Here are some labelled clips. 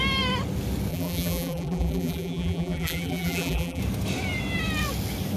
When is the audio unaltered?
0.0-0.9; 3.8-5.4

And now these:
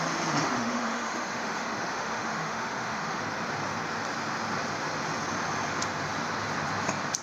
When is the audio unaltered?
0.0-0.4; 3.2-7.2

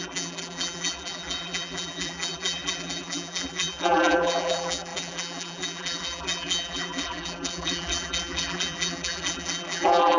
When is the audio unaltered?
none